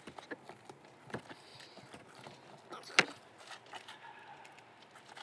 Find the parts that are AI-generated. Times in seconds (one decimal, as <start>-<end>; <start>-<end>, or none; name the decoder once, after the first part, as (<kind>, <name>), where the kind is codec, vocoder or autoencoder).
none